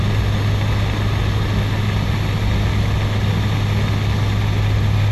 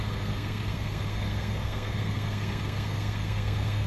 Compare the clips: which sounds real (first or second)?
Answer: first